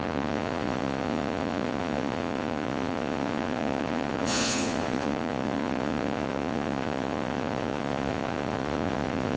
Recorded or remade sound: remade